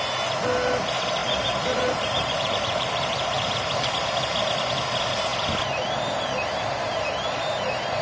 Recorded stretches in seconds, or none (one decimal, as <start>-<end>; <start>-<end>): 0.0-1.2; 3.8-8.0